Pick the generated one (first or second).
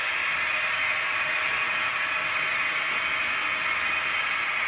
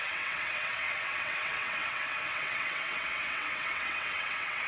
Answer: second